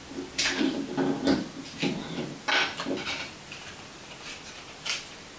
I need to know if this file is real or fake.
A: real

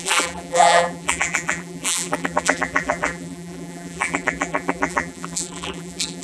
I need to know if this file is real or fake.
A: fake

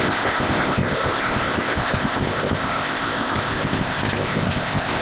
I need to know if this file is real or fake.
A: fake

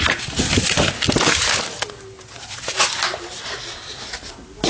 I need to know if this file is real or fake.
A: real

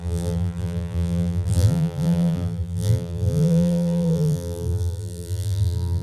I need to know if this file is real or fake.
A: fake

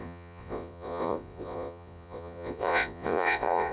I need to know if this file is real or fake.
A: fake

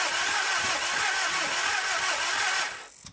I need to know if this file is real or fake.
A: real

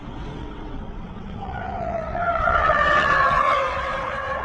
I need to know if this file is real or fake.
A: fake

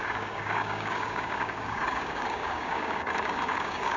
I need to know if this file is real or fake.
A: fake